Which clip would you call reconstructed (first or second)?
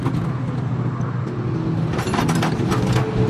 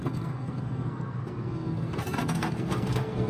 second